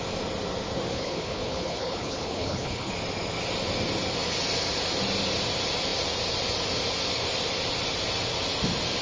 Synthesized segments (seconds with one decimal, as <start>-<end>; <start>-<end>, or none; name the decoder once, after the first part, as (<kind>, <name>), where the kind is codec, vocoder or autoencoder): 0.9-2.9 (codec, HILCodec)

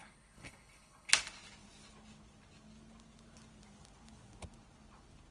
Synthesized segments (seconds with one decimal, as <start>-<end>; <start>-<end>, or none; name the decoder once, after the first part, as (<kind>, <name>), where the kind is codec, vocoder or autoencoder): 0.0-1.1 (codec, HILCodec)

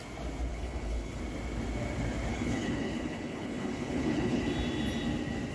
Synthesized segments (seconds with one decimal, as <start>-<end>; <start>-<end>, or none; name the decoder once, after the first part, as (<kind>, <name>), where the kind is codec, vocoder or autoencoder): 0.5-1.2 (codec, HILCodec); 2.3-4.4

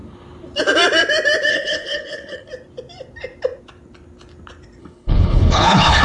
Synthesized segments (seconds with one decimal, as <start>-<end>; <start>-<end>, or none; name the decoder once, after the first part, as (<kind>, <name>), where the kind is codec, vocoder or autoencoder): 1.5-2.5 (codec, HILCodec); 4.8-6.0